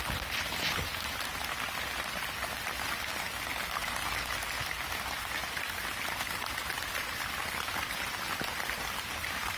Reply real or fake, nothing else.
real